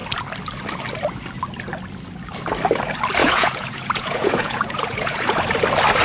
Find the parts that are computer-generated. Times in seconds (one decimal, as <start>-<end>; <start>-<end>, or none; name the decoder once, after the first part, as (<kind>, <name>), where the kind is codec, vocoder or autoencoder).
3.2-5.4 (vocoder, Vocos)